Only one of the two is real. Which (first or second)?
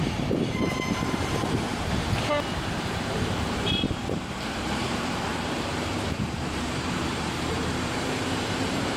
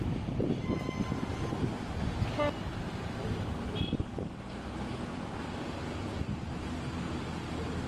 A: second